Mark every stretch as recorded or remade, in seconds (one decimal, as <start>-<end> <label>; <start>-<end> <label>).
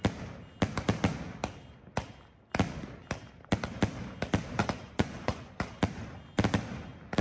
0.0-4.6 recorded; 4.6-5.6 remade; 5.6-7.2 recorded